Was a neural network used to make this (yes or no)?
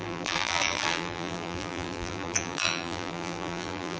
yes